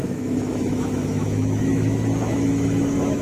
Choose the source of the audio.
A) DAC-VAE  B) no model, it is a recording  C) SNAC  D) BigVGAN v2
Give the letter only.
A